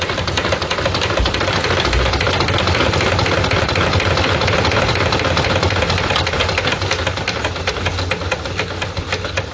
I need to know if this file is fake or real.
real